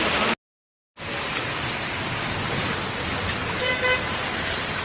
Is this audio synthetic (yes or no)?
no